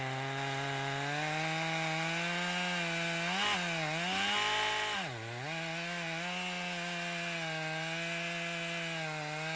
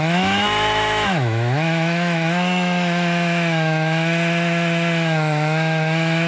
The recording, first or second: first